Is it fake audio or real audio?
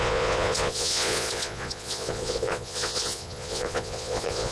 fake